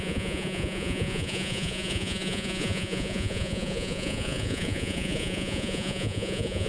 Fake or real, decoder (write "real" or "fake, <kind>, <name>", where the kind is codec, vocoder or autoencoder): fake, vocoder, Vocos